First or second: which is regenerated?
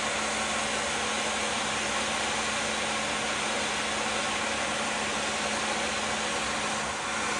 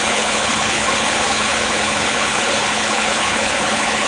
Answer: second